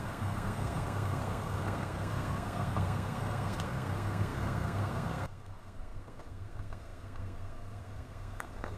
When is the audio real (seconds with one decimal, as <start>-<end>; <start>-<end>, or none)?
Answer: none